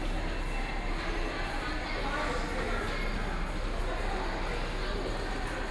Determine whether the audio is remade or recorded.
recorded